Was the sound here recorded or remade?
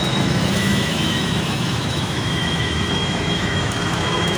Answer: remade